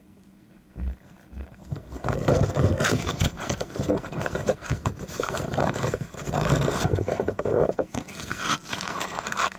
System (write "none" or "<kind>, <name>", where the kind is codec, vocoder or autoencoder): codec, SNAC